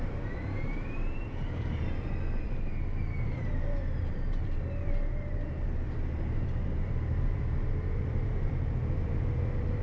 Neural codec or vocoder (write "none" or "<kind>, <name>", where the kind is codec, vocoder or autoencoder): vocoder, BigVGAN v2